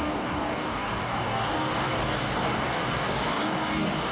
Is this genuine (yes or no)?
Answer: no